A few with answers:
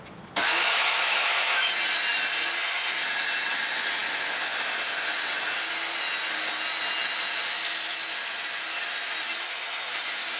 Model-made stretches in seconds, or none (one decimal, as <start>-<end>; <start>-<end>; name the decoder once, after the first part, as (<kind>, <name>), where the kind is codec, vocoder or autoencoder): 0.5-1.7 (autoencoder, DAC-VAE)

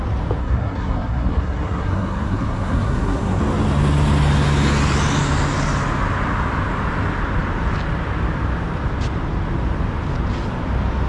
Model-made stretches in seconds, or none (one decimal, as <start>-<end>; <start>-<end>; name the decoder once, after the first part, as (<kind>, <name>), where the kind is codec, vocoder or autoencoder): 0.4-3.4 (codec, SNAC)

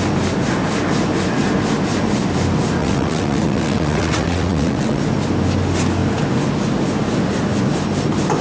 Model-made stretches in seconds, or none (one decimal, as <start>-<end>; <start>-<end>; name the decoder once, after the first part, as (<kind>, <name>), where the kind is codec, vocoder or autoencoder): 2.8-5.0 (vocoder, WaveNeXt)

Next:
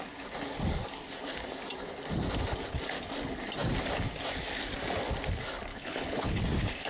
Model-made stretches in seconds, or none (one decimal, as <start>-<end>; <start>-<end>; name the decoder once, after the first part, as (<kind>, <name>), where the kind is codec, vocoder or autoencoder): 5.7-6.4 (codec, HILCodec)

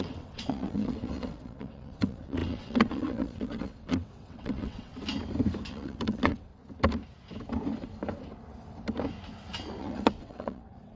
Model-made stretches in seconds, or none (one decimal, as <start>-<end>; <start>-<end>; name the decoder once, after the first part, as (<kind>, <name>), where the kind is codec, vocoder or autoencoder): 0.0-4.9 (vocoder, WaveNeXt); 5.7-6.5; 9.8-11.0